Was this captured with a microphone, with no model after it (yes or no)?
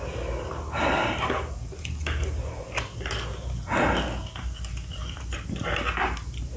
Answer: yes